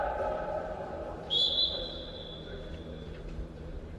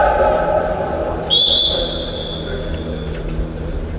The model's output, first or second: first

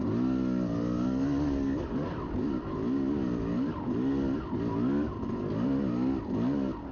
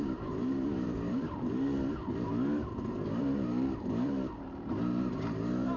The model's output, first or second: second